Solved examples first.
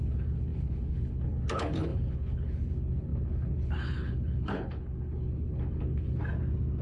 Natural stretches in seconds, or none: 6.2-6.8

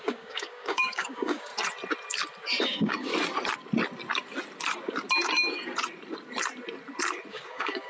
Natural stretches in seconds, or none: 1.5-2.6; 3.1-7.3

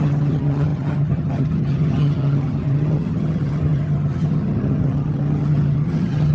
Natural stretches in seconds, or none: none

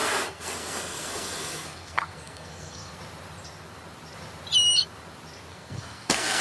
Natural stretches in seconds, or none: 3.0-5.5

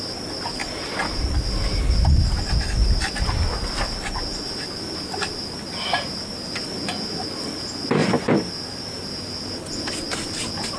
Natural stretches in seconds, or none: 0.0-10.8

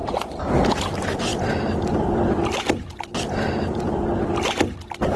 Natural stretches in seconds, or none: 0.8-1.3; 4.0-5.2